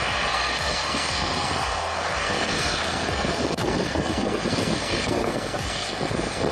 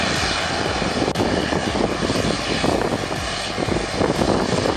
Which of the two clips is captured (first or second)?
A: second